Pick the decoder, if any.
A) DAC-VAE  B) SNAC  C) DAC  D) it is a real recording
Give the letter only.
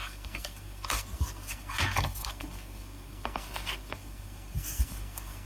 B